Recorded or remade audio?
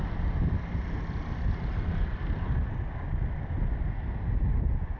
recorded